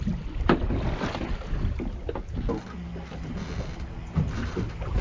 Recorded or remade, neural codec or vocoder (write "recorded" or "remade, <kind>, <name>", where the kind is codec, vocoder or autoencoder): recorded